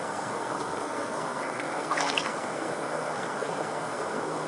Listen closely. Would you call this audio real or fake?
fake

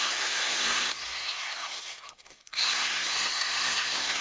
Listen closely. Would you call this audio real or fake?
fake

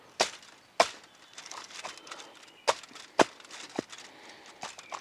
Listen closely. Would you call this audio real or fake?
real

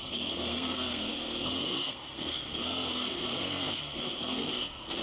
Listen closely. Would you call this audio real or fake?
fake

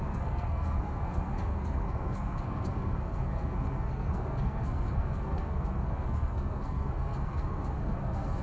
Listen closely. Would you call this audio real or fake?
fake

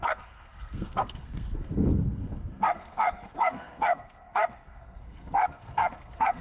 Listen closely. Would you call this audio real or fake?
fake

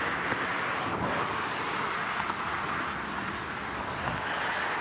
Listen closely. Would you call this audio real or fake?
real